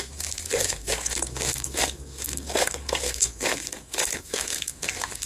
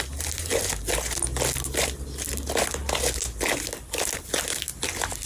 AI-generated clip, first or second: first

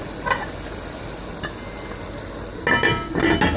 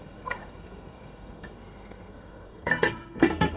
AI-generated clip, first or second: second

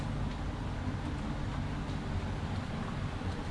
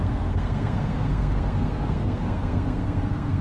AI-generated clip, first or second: second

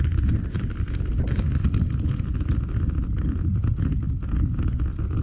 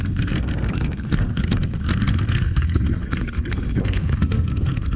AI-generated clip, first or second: second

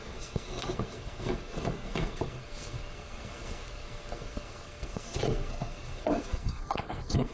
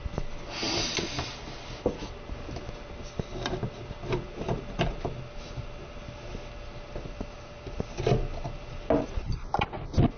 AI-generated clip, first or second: first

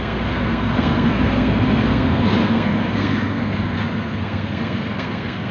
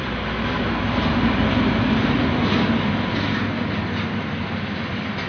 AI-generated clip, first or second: first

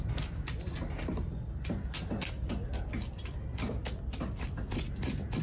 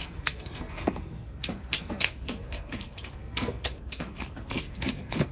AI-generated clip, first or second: second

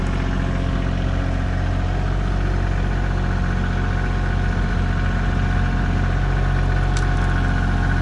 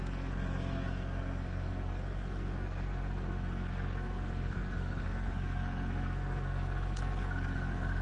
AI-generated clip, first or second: second